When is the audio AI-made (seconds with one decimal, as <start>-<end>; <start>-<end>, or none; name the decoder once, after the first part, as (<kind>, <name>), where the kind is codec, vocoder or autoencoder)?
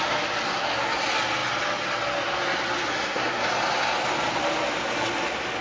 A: 2.9-3.5 (codec, SNAC)